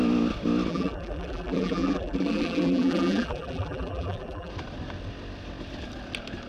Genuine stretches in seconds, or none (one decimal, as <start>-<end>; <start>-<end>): 0.0-0.7; 4.5-6.5